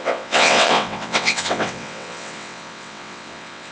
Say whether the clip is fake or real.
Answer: fake